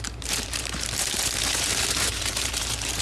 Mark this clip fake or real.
fake